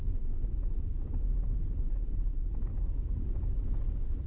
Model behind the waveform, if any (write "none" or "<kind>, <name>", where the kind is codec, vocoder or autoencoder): none